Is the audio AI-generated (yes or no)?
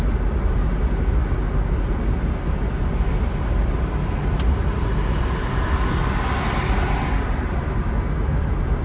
no